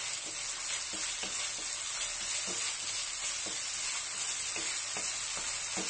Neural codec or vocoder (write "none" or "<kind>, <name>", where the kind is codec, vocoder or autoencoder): none